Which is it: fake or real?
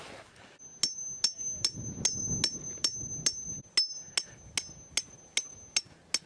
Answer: real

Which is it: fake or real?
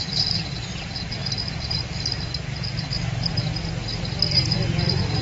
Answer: real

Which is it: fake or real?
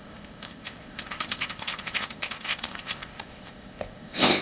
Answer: fake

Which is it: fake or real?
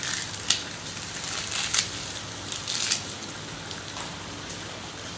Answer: real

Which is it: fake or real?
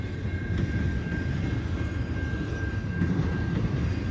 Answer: real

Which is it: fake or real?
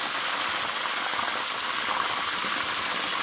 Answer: real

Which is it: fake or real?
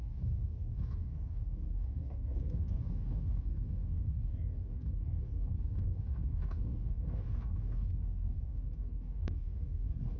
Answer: fake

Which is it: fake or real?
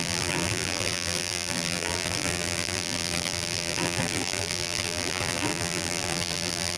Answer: fake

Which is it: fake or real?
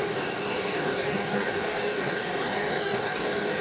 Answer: fake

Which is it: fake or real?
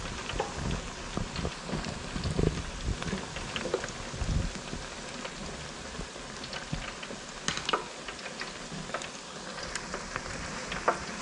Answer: real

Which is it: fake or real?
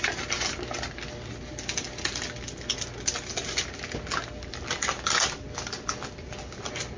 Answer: real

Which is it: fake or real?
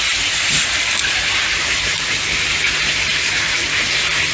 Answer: fake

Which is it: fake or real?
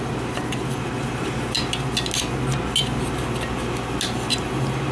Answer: real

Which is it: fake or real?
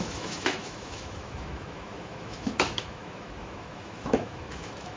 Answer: fake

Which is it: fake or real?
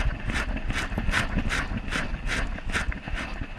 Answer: real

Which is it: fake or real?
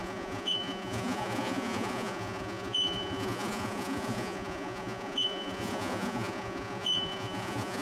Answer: fake